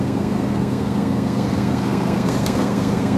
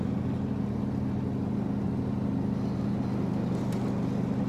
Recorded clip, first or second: second